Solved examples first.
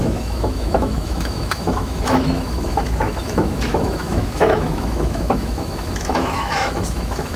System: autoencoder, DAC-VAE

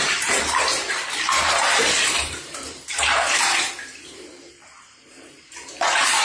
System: vocoder, BigVGAN v2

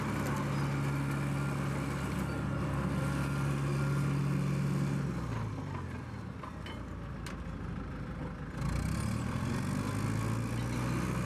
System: none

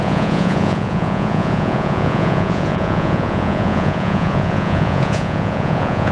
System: vocoder, Vocos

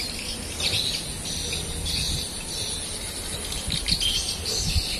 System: none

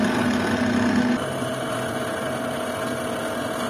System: none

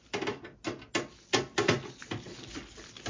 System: none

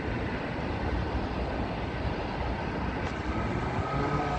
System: none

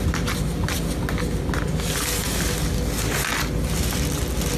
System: none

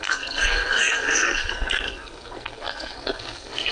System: codec, SNAC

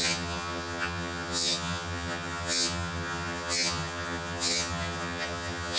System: vocoder, HiFi-GAN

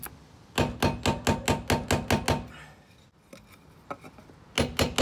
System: none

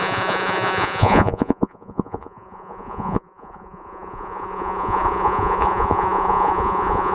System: vocoder, Vocos